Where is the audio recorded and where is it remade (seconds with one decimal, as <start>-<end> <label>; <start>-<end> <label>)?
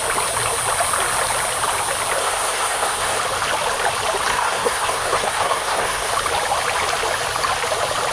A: 0.0-2.2 recorded; 2.2-3.2 remade; 3.2-4.3 recorded; 4.3-6.1 remade; 6.1-8.1 recorded